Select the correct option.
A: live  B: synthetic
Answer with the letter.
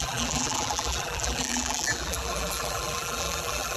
B